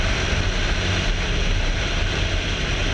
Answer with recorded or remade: recorded